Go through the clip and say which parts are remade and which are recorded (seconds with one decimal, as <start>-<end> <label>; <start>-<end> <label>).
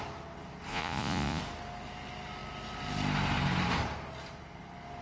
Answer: 0.0-0.7 recorded; 0.7-1.4 remade; 1.4-5.0 recorded